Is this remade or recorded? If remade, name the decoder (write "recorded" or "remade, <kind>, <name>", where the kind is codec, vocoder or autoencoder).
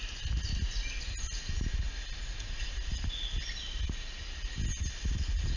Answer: recorded